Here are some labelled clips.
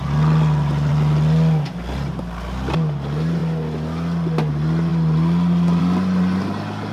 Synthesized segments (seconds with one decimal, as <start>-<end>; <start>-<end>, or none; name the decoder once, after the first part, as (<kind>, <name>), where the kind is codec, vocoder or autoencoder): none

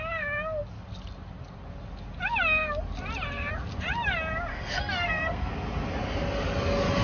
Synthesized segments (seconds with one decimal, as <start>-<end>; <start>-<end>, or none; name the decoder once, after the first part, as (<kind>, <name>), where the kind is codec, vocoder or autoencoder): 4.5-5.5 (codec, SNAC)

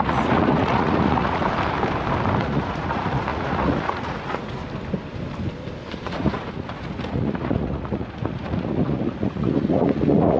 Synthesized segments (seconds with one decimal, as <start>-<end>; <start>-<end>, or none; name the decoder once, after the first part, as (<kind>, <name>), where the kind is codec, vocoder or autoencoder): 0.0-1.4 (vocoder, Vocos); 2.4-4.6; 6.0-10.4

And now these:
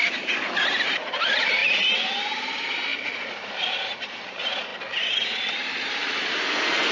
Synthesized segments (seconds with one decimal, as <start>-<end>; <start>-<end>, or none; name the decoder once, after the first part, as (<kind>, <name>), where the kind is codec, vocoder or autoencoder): 0.0-4.7 (vocoder, BigVGAN v2); 5.4-6.9

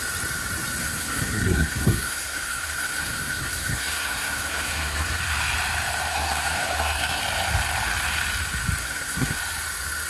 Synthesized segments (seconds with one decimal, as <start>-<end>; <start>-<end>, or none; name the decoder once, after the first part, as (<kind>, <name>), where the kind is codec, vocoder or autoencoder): 0.8-5.2 (codec, SNAC); 6.1-7.2; 8.8-9.4

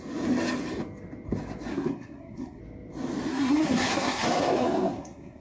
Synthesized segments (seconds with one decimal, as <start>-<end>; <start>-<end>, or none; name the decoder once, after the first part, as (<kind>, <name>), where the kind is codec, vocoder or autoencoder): 1.7-2.6 (codec, SNAC); 3.3-5.4